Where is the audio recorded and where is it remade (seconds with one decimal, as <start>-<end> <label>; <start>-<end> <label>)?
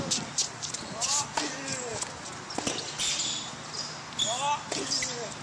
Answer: 0.0-5.4 recorded